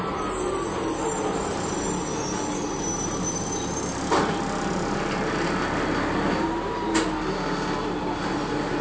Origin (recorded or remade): recorded